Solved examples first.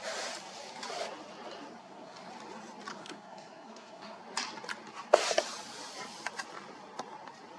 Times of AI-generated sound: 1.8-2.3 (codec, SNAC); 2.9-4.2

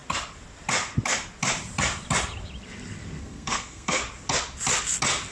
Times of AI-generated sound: 3.2-4.0 (codec, SNAC)

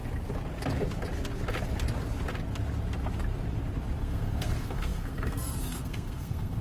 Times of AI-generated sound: 4.0-6.6 (codec, SNAC)

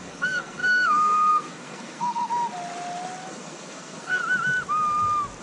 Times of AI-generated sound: 0.0-2.3 (codec, SNAC); 3.3-4.2

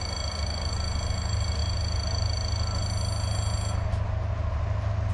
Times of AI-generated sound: none

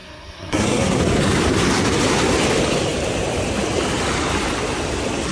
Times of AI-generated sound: 0.0-1.0 (codec, SNAC)

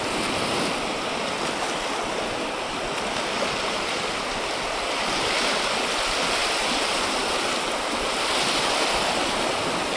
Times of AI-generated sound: none